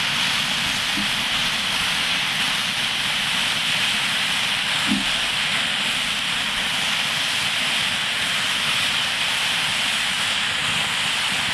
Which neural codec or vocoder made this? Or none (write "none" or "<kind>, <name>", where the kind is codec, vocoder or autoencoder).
none